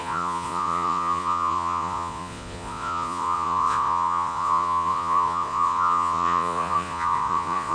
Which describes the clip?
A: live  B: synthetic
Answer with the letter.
B